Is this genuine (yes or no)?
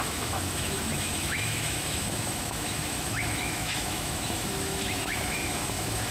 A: no